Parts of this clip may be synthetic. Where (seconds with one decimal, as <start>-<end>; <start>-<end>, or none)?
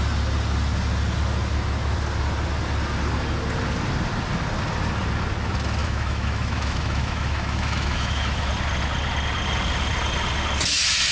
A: 5.8-8.5